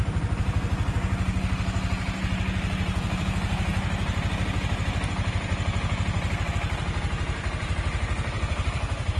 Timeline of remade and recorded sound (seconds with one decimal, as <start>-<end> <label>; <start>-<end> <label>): 0.0-3.7 remade; 3.7-6.5 recorded; 6.5-9.2 remade